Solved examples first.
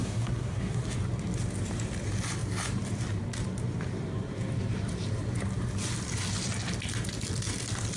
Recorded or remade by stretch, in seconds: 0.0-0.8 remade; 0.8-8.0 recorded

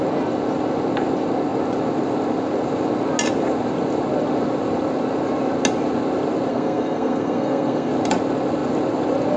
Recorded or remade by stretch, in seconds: 0.0-6.5 recorded; 6.5-7.9 remade; 7.9-9.4 recorded

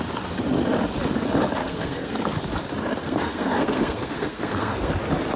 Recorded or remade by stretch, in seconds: 0.0-1.6 recorded; 1.6-2.3 remade; 2.3-3.0 recorded; 3.0-4.9 remade; 4.9-5.4 recorded

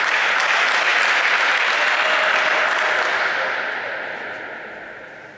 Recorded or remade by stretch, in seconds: 0.0-5.4 recorded

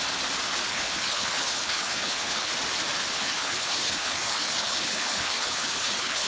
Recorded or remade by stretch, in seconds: 0.0-0.7 recorded; 0.7-2.5 remade; 2.5-3.1 recorded; 3.1-6.3 remade